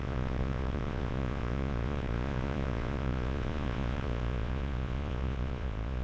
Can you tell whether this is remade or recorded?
remade